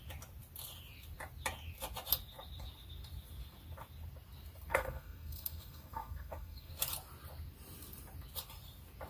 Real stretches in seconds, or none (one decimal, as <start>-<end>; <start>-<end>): 0.0-4.7; 6.7-9.1